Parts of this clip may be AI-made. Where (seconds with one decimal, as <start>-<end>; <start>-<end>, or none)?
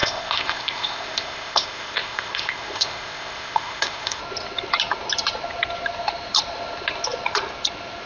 0.0-4.2